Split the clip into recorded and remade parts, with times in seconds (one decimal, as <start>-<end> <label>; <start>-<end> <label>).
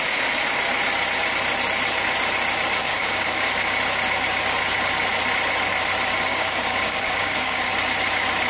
0.0-2.8 recorded; 2.8-3.5 remade; 3.5-6.3 recorded; 6.3-7.7 remade; 7.7-8.5 recorded